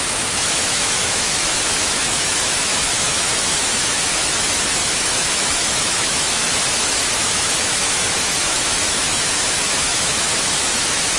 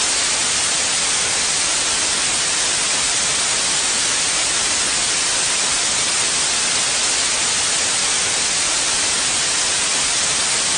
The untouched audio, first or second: second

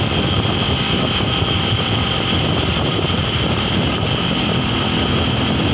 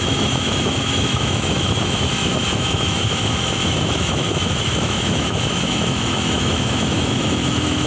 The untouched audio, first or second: first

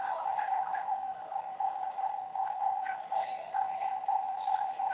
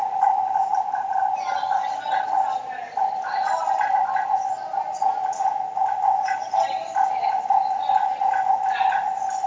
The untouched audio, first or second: second